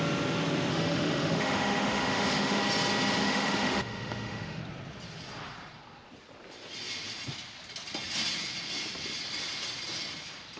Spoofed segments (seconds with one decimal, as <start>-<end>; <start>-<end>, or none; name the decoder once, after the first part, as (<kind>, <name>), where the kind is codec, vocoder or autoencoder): 0.7-2.6 (autoencoder, DAC-VAE); 3.2-4.6